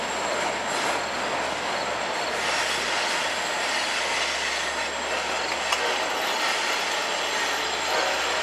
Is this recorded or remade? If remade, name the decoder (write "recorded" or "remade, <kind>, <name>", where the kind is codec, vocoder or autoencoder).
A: recorded